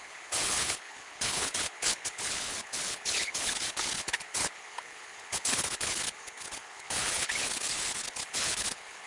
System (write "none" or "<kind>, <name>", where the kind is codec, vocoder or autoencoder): codec, HILCodec